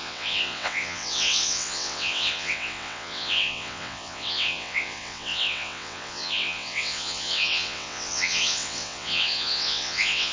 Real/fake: fake